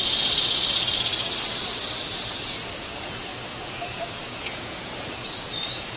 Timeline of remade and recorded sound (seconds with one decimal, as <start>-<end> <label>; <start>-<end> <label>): 0.0-2.1 recorded; 2.1-6.0 remade